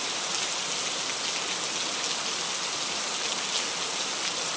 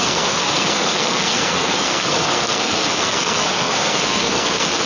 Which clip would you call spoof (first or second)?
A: second